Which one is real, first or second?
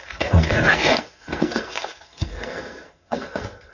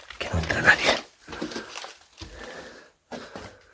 second